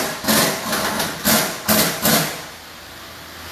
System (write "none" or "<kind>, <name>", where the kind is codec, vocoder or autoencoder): none